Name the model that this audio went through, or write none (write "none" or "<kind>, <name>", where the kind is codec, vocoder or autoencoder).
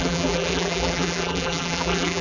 vocoder, BigVGAN v2